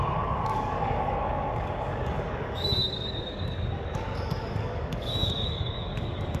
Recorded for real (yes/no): no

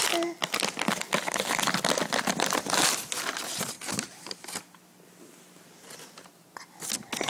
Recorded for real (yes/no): yes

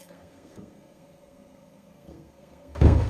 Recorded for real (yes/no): no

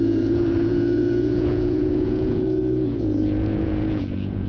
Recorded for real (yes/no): no